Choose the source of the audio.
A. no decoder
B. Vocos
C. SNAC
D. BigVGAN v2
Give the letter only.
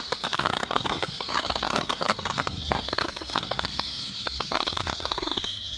C